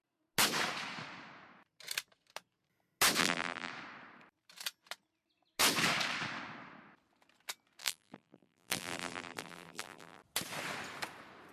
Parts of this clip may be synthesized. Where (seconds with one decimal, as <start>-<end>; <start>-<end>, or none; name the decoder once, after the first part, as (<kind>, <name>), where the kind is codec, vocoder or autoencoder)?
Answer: 3.2-3.7 (vocoder, BigVGAN v2); 7.8-10.2